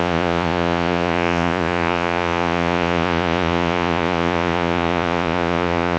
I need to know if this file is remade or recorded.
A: remade